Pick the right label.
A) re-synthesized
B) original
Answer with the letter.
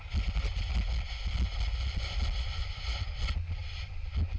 B